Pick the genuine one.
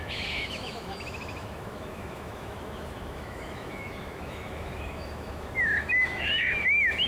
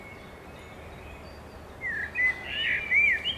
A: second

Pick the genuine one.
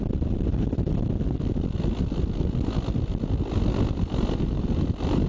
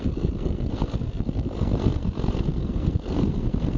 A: first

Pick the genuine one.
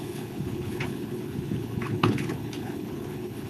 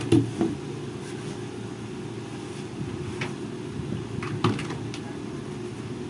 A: second